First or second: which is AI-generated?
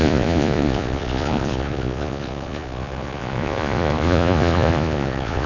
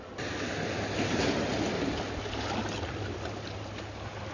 first